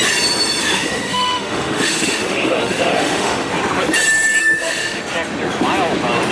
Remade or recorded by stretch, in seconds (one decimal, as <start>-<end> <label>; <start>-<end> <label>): 0.0-0.6 recorded; 0.6-3.5 remade; 3.5-4.4 recorded; 4.4-5.0 remade; 5.0-6.3 recorded